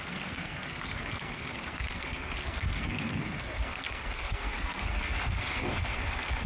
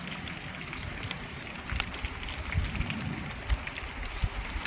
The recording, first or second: second